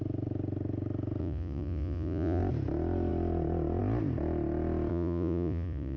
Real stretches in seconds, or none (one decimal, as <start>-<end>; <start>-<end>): 0.0-1.2; 2.4-4.9